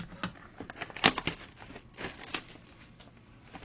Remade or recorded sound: recorded